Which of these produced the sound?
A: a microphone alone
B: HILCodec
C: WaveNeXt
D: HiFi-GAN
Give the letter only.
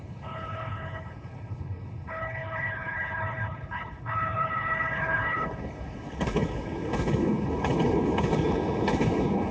B